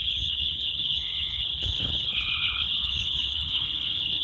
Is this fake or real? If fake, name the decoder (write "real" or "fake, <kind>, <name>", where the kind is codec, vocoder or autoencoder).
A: fake, codec, HILCodec